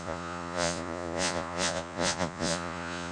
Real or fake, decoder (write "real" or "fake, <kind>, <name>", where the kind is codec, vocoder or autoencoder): fake, vocoder, Vocos